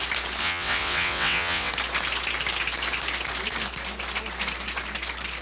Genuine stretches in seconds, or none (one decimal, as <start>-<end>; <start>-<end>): 0.0-0.4; 1.7-5.4